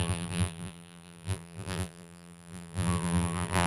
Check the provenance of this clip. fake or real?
fake